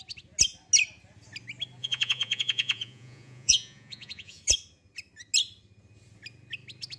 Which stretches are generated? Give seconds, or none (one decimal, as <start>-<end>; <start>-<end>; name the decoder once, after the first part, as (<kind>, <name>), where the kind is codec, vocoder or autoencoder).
1.8-4.4 (vocoder, Vocos)